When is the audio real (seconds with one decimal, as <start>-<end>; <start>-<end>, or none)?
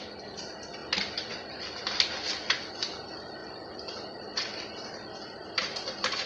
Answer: 0.0-5.4